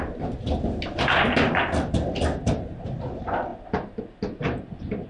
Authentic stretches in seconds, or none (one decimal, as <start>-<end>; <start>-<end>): 0.0-5.1